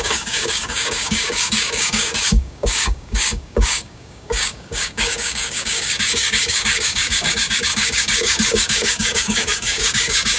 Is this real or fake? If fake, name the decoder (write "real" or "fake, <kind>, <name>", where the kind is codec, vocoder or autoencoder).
fake, codec, DAC